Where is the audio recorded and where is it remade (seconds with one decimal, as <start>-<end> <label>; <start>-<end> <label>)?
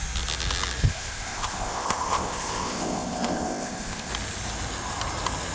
0.0-0.8 recorded; 0.8-4.1 remade; 4.1-5.5 recorded